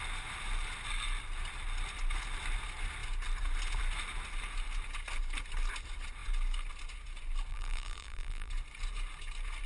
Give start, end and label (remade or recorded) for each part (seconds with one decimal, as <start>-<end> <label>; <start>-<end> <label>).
0.0-7.5 recorded; 7.5-8.5 remade; 8.5-9.7 recorded